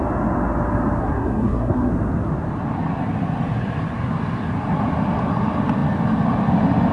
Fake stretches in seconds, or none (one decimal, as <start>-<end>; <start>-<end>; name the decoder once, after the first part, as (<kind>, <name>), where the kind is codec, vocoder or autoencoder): 1.0-1.9 (codec, SNAC)